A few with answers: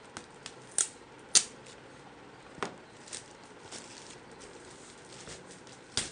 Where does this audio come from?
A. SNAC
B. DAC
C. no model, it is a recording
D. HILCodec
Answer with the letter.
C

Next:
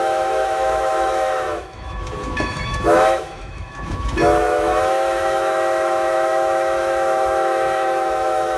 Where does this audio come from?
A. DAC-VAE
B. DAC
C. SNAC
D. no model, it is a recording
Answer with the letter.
A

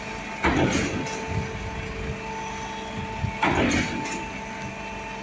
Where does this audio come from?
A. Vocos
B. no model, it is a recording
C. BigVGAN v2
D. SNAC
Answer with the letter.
B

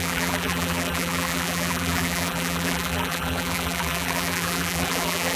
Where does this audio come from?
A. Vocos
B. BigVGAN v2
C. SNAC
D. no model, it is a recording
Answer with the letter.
B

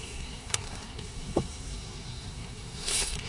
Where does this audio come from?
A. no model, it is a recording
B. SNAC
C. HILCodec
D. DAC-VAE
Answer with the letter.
B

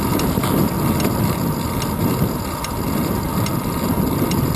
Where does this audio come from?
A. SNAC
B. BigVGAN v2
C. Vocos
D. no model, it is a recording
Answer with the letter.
D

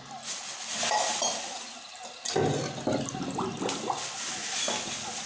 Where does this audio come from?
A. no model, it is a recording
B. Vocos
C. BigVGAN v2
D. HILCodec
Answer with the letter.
A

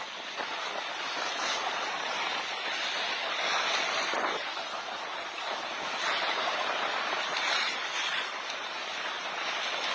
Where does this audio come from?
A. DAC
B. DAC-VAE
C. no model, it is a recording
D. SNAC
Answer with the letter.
C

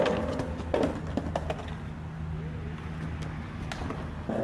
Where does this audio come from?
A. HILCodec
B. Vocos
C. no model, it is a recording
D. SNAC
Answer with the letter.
C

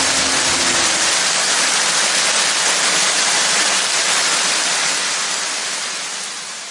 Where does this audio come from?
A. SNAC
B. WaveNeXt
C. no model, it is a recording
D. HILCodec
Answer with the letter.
C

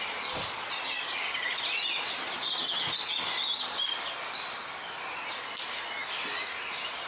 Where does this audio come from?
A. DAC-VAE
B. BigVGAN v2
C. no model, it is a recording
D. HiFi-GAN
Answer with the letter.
C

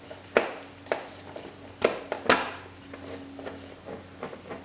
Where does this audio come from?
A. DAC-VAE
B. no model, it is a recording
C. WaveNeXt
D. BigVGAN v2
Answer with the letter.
B